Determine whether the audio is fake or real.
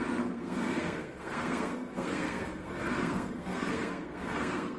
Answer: fake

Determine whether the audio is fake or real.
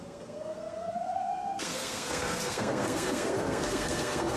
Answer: fake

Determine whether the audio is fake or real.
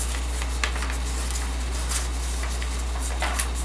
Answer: real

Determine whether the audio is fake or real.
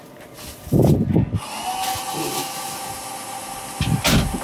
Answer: real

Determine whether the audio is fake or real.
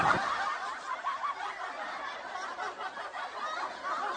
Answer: real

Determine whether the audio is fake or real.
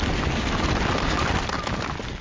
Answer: real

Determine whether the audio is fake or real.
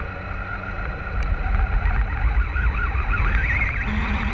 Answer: real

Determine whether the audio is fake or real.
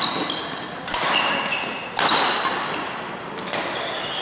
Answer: real